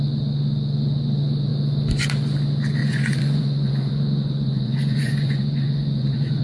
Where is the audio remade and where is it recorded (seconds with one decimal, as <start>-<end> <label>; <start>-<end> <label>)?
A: 0.0-2.8 recorded; 2.8-6.4 remade